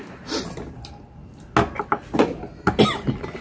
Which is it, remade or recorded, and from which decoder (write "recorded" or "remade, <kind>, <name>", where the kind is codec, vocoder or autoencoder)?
recorded